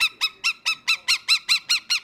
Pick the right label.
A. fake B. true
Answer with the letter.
B